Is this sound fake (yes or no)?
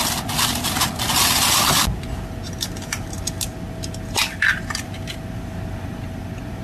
no